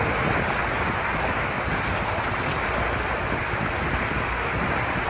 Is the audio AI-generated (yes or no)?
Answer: yes